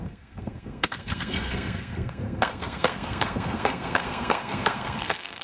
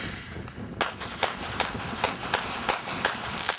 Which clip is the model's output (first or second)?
first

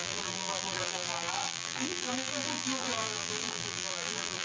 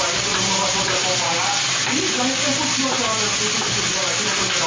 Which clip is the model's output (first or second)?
first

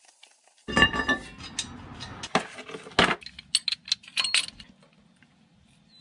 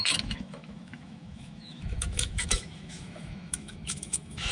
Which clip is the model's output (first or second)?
second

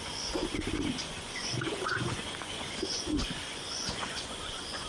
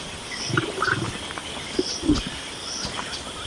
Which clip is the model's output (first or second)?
first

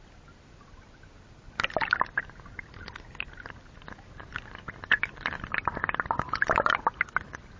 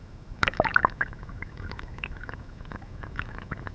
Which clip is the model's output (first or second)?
second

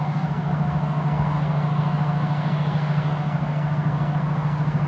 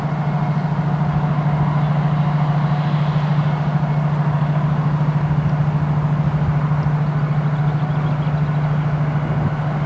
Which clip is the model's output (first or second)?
first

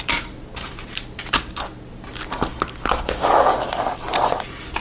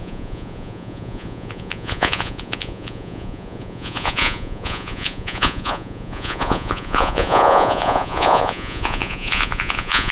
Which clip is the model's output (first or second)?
second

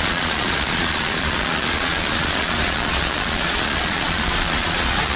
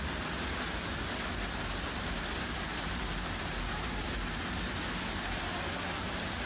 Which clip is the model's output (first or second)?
first